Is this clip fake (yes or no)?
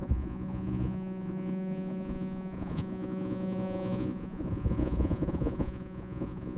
yes